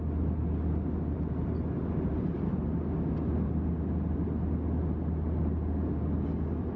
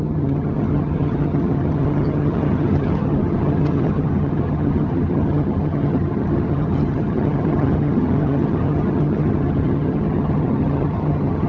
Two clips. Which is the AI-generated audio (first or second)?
second